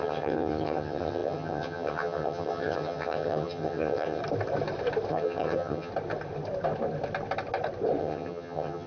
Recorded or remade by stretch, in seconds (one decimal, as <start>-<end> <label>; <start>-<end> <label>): 0.0-4.2 remade; 4.2-5.1 recorded; 5.1-5.9 remade; 5.9-8.0 recorded; 8.0-8.9 remade